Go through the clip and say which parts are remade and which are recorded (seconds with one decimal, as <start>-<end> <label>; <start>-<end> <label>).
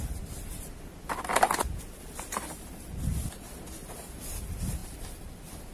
0.0-5.7 recorded